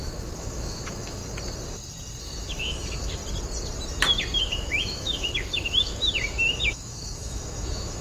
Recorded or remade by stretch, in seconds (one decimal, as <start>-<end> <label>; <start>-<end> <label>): 0.0-1.2 remade; 1.2-2.2 recorded; 2.2-3.2 remade; 3.2-4.4 recorded; 4.4-8.0 remade